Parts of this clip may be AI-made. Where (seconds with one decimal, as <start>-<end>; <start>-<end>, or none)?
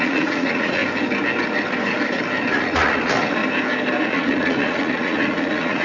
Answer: 0.0-0.8; 2.5-3.4; 4.0-5.8